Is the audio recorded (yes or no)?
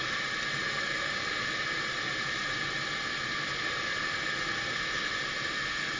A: yes